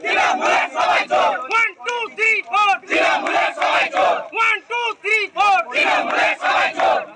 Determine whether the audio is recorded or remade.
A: recorded